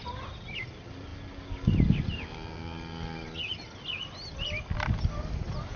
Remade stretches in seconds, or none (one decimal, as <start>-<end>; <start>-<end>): none